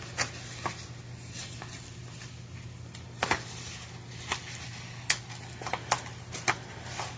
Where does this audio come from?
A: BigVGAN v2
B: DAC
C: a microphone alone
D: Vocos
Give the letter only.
C